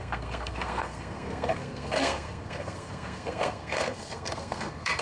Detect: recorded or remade remade